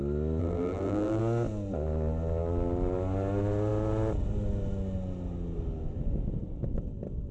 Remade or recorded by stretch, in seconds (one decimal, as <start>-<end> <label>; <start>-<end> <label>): 0.0-0.4 recorded; 0.4-1.2 remade; 1.2-7.3 recorded